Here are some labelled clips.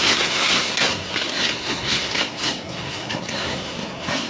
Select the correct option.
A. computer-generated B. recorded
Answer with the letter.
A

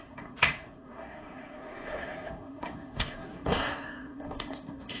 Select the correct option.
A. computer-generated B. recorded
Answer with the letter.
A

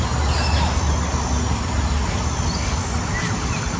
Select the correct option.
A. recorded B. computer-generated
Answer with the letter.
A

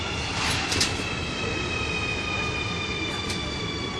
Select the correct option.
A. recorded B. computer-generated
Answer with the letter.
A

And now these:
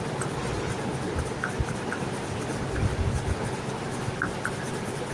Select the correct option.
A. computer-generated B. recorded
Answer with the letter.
B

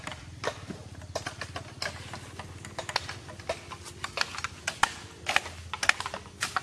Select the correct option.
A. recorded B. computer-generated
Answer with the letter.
A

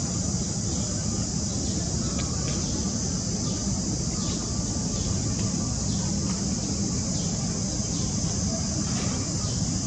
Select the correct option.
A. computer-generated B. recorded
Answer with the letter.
B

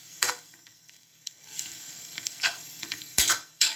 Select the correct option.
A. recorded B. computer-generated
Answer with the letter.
B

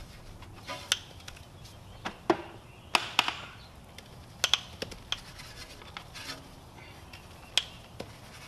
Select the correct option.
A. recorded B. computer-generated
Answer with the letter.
A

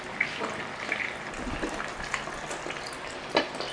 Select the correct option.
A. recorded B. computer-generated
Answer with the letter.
A